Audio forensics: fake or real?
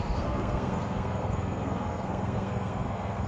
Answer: fake